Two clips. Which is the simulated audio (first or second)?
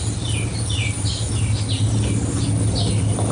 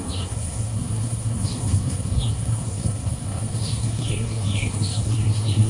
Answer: second